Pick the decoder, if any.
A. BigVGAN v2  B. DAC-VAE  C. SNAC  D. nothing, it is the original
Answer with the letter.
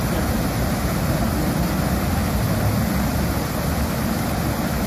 A